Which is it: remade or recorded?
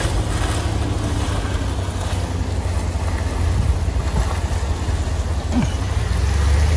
recorded